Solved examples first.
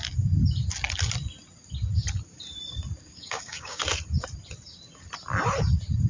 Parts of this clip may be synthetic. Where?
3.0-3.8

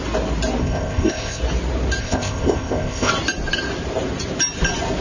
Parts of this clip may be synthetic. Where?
0.6-1.4; 2.0-3.1

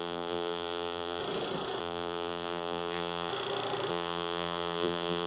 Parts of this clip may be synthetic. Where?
0.0-1.2; 1.8-3.3; 3.9-5.3